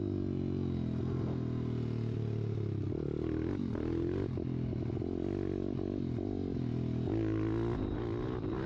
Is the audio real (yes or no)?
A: yes